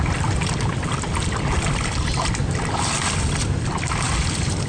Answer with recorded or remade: recorded